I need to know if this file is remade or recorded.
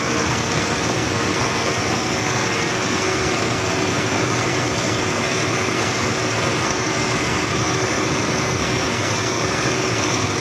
remade